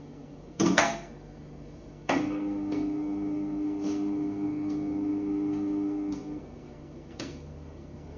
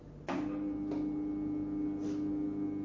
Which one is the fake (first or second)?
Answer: first